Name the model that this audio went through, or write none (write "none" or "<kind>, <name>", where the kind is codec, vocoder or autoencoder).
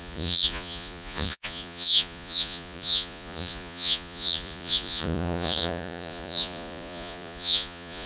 vocoder, Vocos